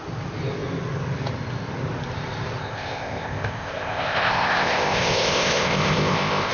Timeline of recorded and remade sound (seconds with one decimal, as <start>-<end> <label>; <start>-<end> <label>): 0.0-2.6 recorded; 2.6-6.5 remade